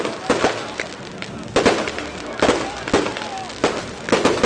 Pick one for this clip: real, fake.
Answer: real